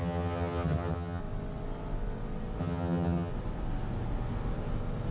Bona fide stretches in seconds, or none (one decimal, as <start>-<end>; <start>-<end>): 1.2-2.6; 3.3-5.1